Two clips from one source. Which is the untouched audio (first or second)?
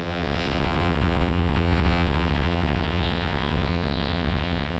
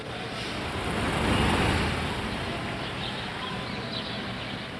second